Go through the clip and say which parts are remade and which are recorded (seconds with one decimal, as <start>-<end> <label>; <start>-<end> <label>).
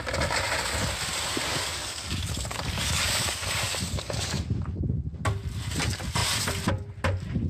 0.0-1.5 recorded; 1.5-4.4 remade; 4.4-7.5 recorded